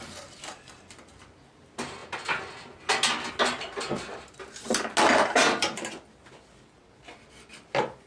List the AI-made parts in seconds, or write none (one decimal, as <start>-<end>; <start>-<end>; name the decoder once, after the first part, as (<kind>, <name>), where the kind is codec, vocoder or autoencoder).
none